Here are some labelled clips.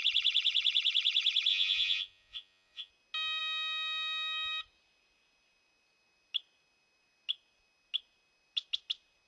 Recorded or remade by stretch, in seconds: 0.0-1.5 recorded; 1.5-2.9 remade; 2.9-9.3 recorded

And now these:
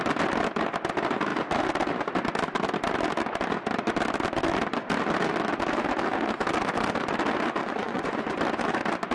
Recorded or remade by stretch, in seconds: 0.0-7.6 recorded; 7.6-8.4 remade; 8.4-9.1 recorded

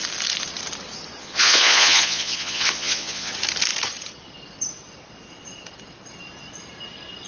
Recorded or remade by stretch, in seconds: 0.0-1.2 recorded; 1.2-3.3 remade; 3.3-7.3 recorded

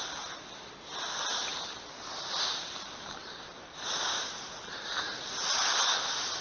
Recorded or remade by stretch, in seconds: 0.0-6.4 recorded

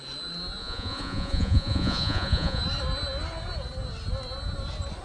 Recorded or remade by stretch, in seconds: 0.0-0.6 recorded; 0.6-2.6 remade; 2.6-5.0 recorded

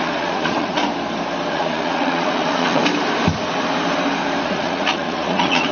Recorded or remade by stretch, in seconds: 0.0-0.8 remade; 0.8-1.5 recorded; 1.5-2.8 remade; 2.8-4.4 recorded; 4.4-5.7 remade